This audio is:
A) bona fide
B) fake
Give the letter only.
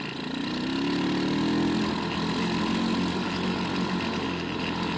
A